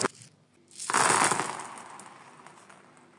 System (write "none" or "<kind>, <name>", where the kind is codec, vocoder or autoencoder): none